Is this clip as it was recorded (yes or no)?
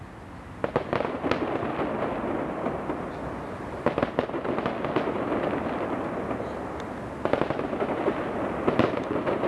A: yes